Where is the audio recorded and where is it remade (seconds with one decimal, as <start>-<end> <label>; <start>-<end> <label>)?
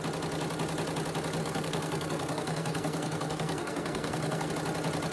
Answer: 0.0-1.4 recorded; 1.4-4.5 remade; 4.5-5.1 recorded